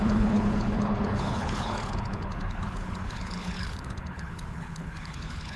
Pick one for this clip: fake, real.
fake